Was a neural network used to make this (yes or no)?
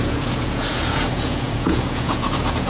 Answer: yes